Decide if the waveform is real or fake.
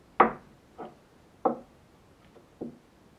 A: real